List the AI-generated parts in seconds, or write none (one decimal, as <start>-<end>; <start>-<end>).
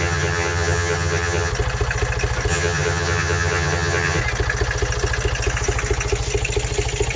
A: 0.0-1.5; 2.5-4.2